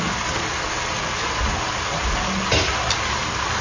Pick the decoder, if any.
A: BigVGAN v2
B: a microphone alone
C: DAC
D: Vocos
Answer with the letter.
B